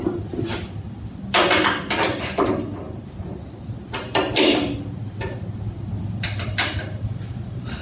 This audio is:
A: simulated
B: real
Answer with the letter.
A